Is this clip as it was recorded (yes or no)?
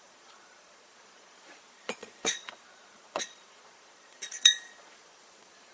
no